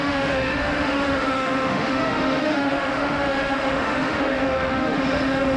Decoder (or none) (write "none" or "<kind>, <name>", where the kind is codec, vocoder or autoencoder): autoencoder, DAC-VAE